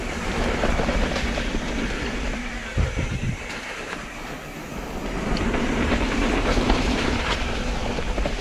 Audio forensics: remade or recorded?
recorded